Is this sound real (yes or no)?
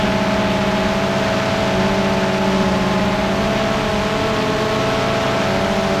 yes